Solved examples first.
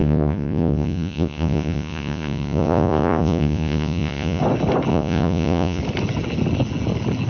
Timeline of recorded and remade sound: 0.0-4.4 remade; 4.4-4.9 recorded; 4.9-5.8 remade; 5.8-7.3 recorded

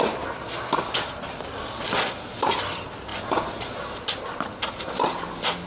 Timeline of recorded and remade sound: 0.0-5.7 recorded

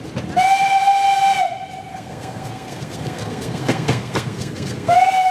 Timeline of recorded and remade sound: 0.0-1.9 recorded; 1.9-5.3 remade